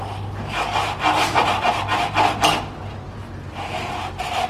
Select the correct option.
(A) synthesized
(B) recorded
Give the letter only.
B